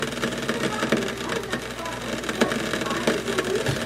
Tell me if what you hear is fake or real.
real